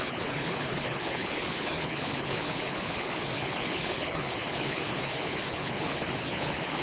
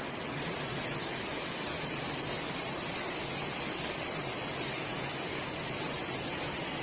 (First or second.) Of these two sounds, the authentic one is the second